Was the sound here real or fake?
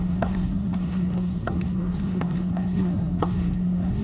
fake